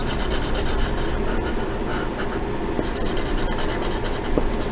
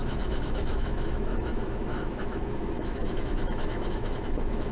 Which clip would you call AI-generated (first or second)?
second